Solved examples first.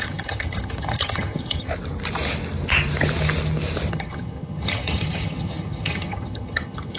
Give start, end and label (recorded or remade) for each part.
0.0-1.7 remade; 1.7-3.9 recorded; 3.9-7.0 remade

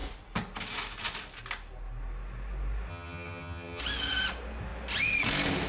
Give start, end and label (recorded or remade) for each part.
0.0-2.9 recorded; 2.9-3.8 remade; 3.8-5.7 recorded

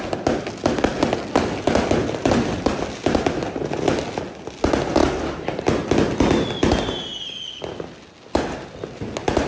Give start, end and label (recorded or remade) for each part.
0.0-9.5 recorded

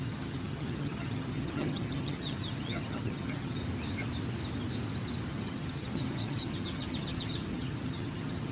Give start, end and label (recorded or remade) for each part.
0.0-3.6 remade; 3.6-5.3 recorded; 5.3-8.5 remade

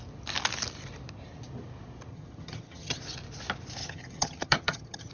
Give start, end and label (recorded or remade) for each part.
0.0-2.1 recorded; 2.1-3.0 remade; 3.0-3.8 recorded; 3.8-5.1 remade

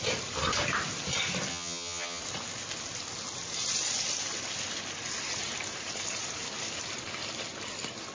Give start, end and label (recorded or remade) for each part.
0.0-1.5 recorded; 1.5-2.2 remade; 2.2-8.1 recorded

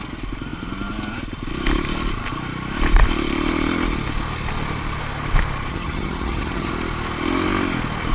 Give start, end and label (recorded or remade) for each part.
0.0-5.7 recorded; 5.7-6.7 remade; 6.7-8.1 recorded